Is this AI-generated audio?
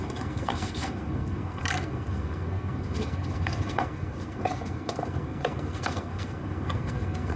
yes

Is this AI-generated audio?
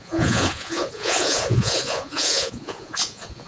yes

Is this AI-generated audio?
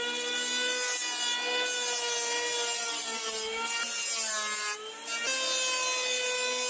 no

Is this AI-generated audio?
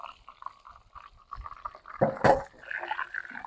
no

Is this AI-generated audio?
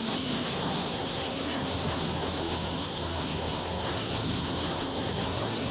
yes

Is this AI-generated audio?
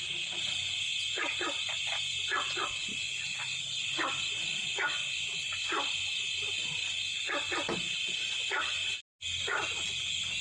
no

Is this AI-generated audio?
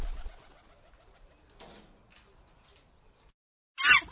no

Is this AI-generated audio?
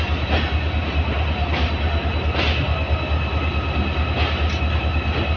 no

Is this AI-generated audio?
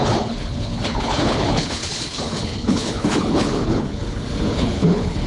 yes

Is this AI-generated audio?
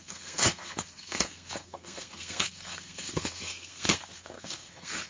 yes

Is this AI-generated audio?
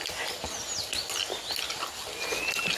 no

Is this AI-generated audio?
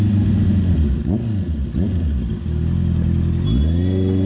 no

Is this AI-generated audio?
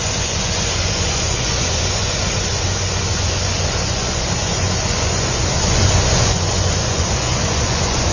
yes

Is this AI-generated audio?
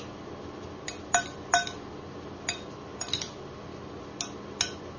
no